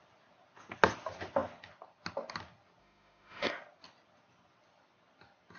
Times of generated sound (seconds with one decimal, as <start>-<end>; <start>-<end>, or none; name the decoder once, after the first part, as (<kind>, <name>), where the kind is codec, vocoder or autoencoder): 2.8-3.5 (autoencoder, DAC-VAE)